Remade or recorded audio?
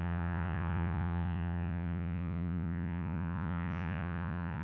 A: remade